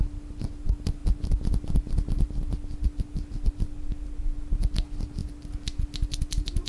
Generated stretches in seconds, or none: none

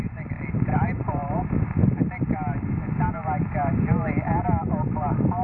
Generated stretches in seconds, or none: 0.7-1.6 (vocoder, BigVGAN v2)

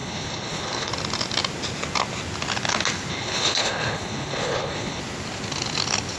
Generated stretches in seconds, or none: 0.0-0.9 (codec, HILCodec); 3.1-5.0

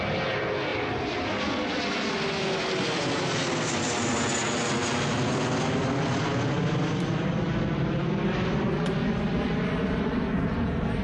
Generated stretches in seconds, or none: none

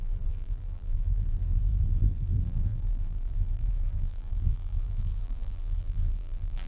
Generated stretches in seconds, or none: 0.0-6.7 (vocoder, BigVGAN v2)

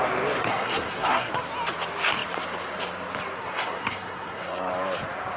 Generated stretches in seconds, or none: 0.4-1.3 (codec, SNAC); 3.4-4.7